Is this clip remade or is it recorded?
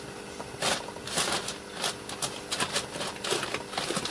recorded